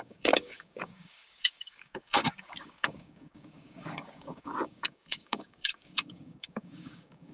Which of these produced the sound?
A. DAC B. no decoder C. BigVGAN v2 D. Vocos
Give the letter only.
A